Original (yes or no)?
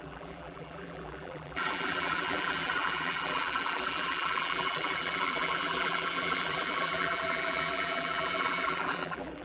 no